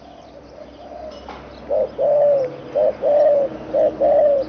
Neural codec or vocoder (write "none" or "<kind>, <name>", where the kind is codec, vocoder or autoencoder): none